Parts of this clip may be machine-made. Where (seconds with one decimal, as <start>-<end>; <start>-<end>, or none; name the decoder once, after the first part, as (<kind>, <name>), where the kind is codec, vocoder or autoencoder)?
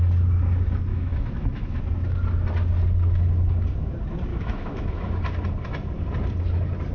0.9-1.8 (autoencoder, DAC-VAE); 4.3-5.1